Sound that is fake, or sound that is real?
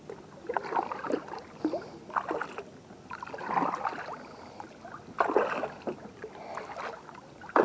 real